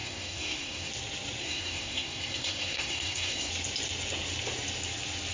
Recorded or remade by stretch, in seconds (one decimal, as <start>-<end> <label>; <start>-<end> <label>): 0.0-0.9 remade; 0.9-1.4 recorded; 1.4-3.5 remade; 3.5-5.3 recorded

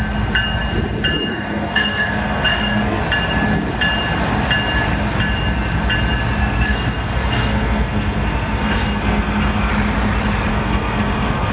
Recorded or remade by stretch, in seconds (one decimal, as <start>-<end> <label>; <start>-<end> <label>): 0.0-1.3 recorded; 1.3-3.0 remade; 3.0-6.4 recorded; 6.4-9.7 remade; 9.7-10.5 recorded; 10.5-11.5 remade

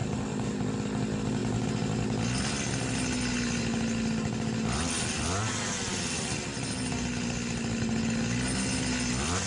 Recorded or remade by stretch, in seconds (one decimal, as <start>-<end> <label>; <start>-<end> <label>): 0.0-9.5 recorded

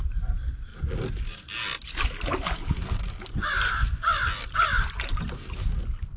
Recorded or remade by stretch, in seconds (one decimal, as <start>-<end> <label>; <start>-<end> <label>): 0.0-6.2 recorded

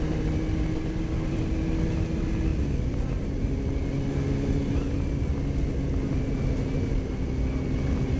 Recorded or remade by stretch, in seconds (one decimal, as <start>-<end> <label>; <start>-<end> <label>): 0.0-8.2 recorded

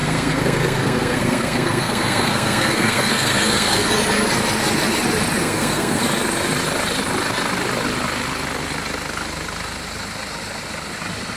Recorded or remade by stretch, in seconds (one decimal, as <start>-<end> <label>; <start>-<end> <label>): 0.0-3.9 remade; 3.9-5.4 recorded; 5.4-6.0 remade; 6.0-11.4 recorded

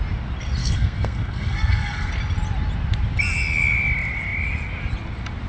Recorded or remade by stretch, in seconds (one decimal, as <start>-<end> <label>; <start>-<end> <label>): 0.0-0.6 recorded; 0.6-2.1 remade; 2.1-5.5 recorded